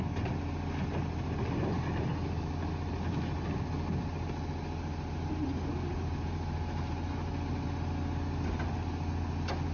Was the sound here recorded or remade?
recorded